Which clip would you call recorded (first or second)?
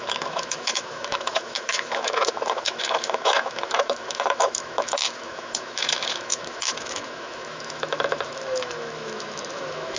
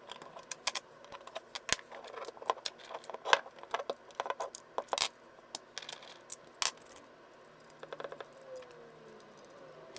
second